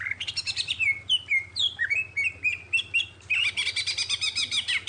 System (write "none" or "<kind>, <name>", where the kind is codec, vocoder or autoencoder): none